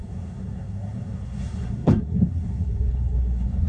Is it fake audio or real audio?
fake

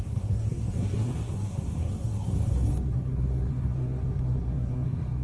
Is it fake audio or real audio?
fake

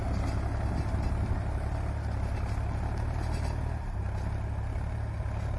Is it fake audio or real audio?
real